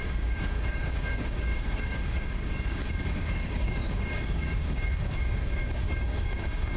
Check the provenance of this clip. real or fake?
fake